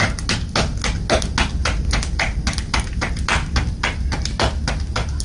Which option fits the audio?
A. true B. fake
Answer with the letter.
A